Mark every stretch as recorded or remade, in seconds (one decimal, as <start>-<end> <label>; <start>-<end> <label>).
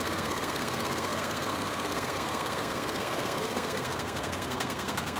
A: 0.0-5.2 remade